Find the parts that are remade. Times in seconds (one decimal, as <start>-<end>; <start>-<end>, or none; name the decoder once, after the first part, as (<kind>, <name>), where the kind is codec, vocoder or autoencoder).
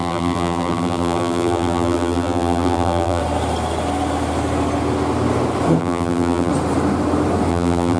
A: 0.0-3.2 (vocoder, BigVGAN v2); 5.8-6.5; 7.5-8.0